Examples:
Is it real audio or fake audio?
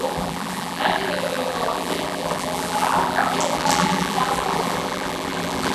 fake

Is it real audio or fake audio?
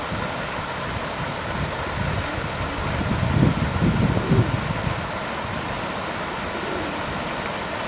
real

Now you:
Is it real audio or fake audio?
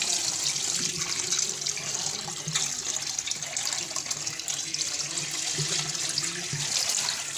real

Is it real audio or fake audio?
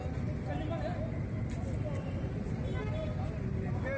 real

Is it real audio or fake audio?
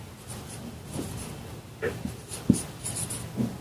real